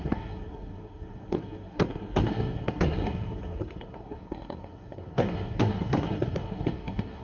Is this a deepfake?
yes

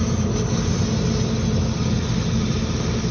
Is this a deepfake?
no